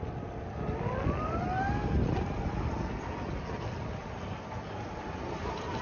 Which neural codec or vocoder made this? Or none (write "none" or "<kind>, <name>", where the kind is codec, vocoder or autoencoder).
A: none